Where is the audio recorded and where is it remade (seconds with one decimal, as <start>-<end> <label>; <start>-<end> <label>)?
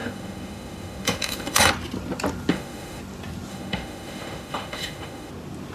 0.0-1.7 remade; 1.7-2.5 recorded; 2.5-3.0 remade; 3.0-3.5 recorded; 3.5-5.3 remade; 5.3-5.7 recorded